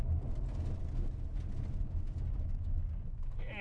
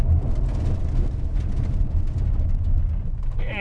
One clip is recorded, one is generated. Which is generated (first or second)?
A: second